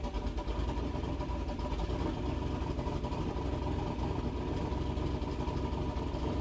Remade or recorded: recorded